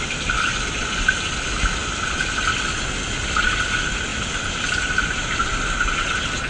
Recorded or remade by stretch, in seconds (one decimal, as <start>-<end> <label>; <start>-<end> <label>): 0.0-6.5 recorded